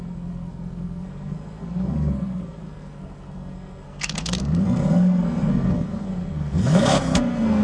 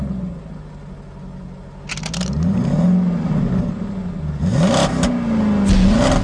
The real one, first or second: second